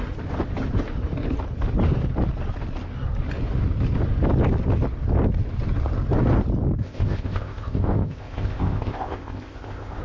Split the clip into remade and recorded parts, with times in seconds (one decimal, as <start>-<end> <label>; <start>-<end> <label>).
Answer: 0.0-6.8 recorded; 6.8-10.0 remade